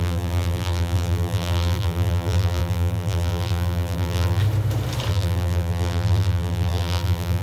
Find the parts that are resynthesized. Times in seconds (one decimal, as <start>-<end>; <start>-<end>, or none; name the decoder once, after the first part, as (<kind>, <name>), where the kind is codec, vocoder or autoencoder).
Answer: 0.0-4.4 (vocoder, BigVGAN v2); 5.1-7.4